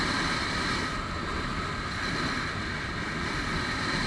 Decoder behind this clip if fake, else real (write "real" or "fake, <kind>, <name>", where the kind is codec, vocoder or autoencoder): real